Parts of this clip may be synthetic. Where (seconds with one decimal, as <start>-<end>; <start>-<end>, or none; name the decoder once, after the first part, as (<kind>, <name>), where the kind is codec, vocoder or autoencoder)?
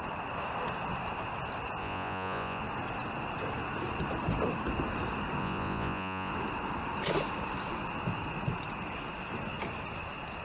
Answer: 1.8-2.6 (vocoder, Vocos); 5.4-6.3